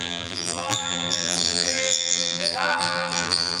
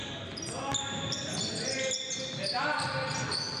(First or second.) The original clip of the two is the second